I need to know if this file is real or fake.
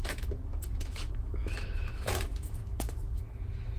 fake